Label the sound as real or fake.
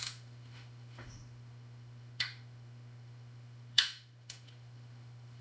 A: fake